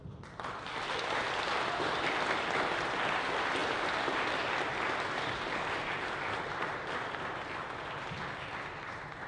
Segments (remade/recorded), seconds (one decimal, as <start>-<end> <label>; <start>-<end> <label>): 0.0-9.3 recorded